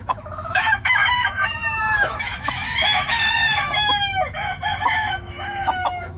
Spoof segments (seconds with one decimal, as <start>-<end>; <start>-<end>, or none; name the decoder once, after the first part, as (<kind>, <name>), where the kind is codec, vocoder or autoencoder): 0.0-6.2 (autoencoder, DAC-VAE)